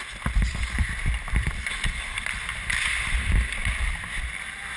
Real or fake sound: real